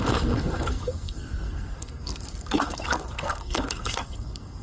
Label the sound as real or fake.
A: fake